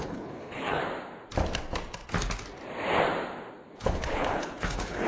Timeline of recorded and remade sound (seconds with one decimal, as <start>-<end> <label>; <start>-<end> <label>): 0.0-0.8 remade; 0.8-3.8 recorded; 3.8-5.1 remade